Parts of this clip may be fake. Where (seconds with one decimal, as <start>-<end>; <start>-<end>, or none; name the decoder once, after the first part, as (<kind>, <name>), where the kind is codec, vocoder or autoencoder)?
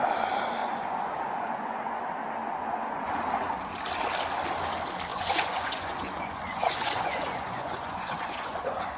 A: 0.6-2.0 (vocoder, Vocos); 2.4-3.1; 5.1-9.0